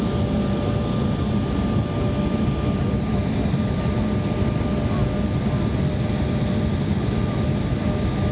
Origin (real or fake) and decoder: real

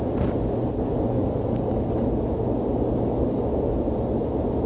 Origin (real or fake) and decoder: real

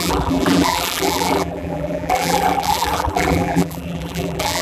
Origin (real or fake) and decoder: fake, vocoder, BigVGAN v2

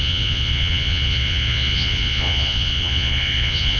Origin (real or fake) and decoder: fake, vocoder, Vocos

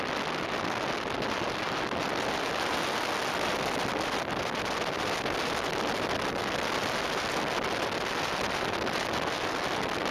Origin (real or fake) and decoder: real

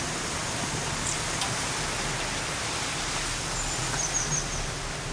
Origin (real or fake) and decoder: real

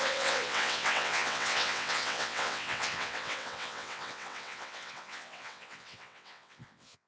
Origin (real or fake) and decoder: fake, vocoder, WaveNeXt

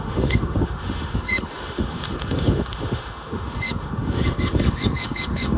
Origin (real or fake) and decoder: fake, autoencoder, DAC-VAE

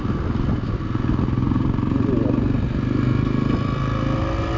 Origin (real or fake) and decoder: real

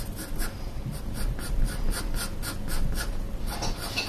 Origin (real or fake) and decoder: real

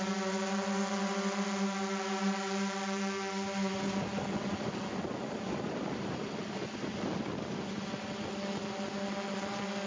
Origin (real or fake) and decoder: real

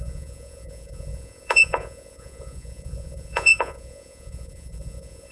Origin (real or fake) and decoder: fake, vocoder, Vocos